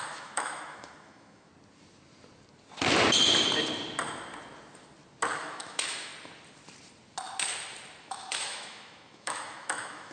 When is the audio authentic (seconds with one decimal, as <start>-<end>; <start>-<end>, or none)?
1.5-5.4; 6.1-8.0